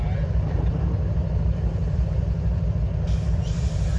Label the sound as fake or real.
fake